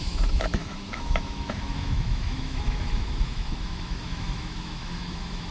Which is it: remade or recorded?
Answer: remade